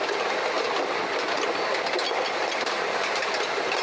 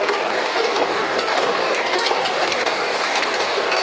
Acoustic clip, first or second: first